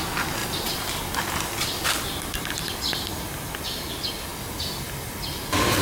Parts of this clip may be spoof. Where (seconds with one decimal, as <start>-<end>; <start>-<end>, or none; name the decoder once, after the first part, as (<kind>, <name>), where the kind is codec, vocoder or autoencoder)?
none